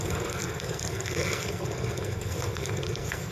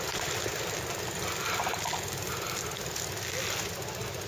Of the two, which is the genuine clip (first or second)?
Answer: second